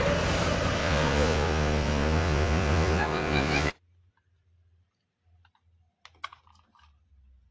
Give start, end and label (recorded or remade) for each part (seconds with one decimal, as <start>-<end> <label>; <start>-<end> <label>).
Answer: 0.0-0.8 recorded; 0.8-3.7 remade; 3.7-7.5 recorded